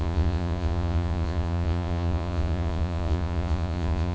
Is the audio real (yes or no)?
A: no